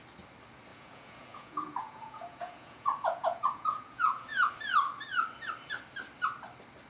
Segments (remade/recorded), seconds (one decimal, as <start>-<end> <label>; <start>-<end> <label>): 0.0-0.7 recorded; 0.7-4.5 remade; 4.5-6.9 recorded

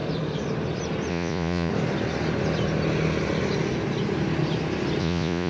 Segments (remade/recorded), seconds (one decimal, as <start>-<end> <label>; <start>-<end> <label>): 0.0-1.1 recorded; 1.1-1.7 remade; 1.7-5.0 recorded; 5.0-5.5 remade